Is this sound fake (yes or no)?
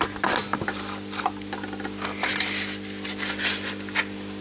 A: no